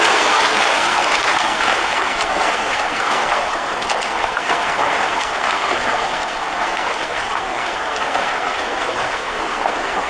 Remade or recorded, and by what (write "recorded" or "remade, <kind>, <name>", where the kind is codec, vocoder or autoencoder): remade, codec, SNAC